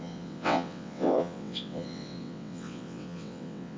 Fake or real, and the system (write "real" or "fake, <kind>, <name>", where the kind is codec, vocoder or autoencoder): fake, vocoder, WaveNeXt